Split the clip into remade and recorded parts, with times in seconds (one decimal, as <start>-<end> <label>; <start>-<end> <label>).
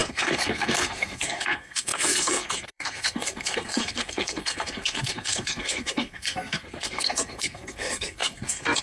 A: 0.0-8.8 remade